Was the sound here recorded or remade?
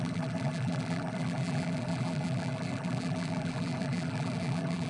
remade